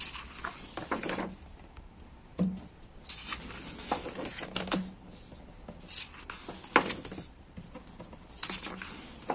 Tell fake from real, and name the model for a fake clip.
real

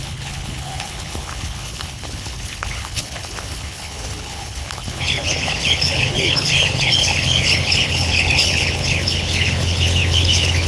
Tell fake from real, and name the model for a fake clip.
fake, codec, HILCodec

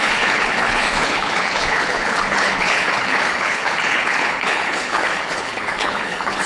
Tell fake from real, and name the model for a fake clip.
fake, codec, HILCodec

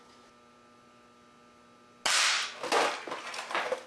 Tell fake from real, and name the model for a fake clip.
real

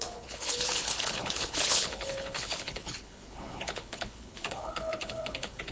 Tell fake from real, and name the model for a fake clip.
fake, codec, HILCodec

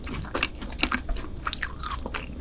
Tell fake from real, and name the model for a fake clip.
real